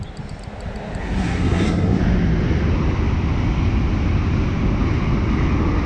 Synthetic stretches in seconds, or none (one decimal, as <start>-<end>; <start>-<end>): 1.0-2.0